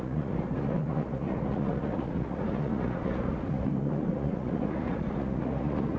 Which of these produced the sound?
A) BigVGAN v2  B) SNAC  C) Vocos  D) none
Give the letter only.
C